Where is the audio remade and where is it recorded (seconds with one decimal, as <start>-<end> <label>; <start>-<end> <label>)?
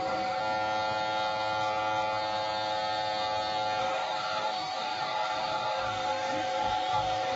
0.0-0.4 remade; 0.4-3.8 recorded; 3.8-7.4 remade